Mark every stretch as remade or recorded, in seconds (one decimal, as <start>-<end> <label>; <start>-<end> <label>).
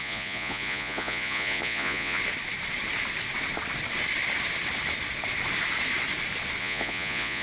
0.0-2.2 remade; 2.2-6.6 recorded; 6.6-7.4 remade